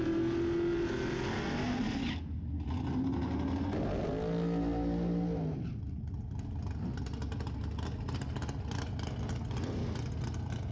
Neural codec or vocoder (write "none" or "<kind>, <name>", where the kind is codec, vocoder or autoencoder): none